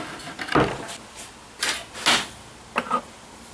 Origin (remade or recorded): recorded